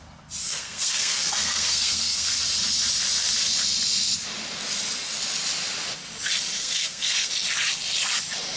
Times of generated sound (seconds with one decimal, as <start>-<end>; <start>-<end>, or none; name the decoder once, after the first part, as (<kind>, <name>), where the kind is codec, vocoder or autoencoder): 0.4-2.4 (codec, SNAC); 6.6-7.3